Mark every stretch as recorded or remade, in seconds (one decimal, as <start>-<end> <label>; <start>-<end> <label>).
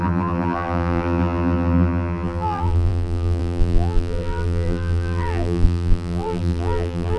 0.0-7.2 remade